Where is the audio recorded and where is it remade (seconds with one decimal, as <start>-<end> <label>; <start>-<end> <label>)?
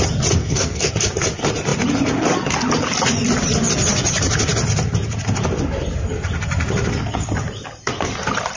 0.0-0.4 recorded; 0.4-0.9 remade; 0.9-8.6 recorded